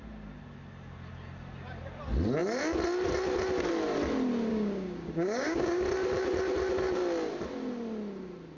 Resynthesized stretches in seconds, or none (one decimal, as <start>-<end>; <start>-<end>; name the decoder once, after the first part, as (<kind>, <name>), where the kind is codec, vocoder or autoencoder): 4.5-5.8 (codec, DAC)